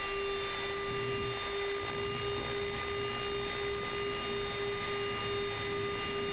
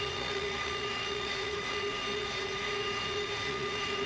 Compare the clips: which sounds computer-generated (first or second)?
second